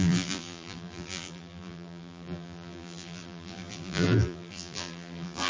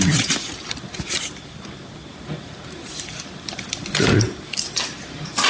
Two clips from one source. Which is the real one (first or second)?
second